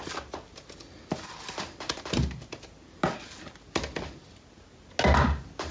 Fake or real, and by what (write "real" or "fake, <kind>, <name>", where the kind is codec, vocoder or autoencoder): real